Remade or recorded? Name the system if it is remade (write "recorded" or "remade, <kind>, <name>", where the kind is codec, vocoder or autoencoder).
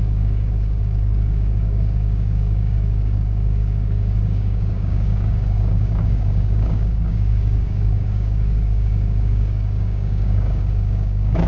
remade, codec, DAC